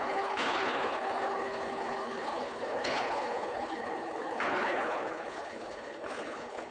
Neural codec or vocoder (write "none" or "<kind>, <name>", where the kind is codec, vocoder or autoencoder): codec, HILCodec